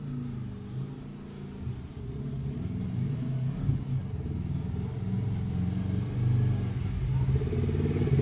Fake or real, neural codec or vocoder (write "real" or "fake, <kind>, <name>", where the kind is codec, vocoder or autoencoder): real